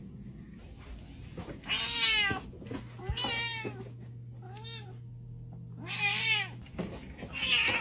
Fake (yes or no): no